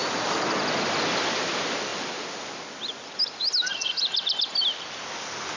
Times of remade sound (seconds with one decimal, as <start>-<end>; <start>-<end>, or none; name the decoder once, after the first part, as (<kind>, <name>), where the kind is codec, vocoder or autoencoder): none

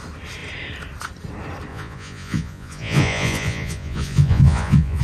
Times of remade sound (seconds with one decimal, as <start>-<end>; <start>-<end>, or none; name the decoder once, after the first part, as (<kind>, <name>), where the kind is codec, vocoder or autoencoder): 1.7-5.0 (vocoder, Vocos)

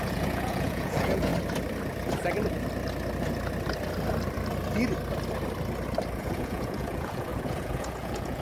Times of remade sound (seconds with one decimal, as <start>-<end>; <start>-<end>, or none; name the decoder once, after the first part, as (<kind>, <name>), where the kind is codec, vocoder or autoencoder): 0.0-1.3 (vocoder, Vocos); 6.2-8.4

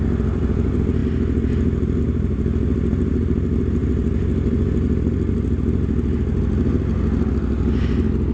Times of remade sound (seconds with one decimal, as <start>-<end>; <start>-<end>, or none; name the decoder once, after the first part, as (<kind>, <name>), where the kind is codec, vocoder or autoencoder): none

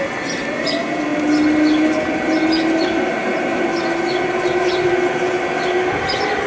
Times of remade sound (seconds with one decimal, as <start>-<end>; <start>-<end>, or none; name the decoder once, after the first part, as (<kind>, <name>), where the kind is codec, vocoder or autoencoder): none

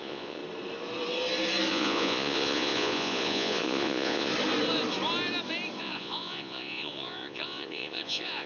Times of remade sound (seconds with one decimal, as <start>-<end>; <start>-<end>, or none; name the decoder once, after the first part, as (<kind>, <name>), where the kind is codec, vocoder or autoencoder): 0.0-0.4 (vocoder, Vocos); 1.7-4.3; 5.8-8.5